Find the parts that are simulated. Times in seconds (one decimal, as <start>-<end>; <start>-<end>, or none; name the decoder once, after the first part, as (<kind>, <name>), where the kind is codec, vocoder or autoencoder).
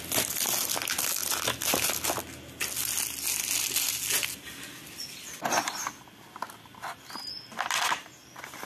none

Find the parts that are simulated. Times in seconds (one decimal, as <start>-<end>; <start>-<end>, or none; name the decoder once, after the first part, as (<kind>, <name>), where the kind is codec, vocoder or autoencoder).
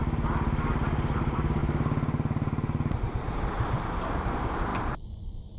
0.0-1.6 (vocoder, BigVGAN v2); 3.0-5.6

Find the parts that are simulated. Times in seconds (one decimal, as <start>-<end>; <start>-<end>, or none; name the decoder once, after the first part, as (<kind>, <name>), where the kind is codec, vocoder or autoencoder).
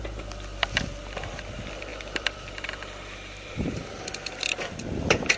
1.9-4.1 (vocoder, BigVGAN v2)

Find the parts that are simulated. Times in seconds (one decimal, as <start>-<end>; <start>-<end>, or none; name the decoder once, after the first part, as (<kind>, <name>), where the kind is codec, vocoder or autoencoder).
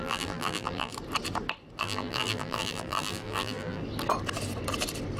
0.0-0.9 (vocoder, BigVGAN v2); 1.8-3.8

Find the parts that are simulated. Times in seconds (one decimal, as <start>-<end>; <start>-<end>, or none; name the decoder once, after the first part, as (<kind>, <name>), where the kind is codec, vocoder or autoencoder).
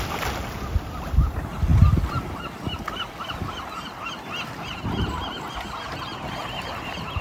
1.7-4.1 (vocoder, BigVGAN v2)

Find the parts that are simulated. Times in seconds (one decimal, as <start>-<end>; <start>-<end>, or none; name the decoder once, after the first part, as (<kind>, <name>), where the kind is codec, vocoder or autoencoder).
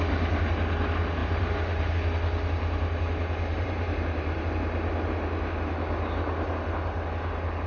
1.2-1.9 (vocoder, BigVGAN v2); 3.5-4.4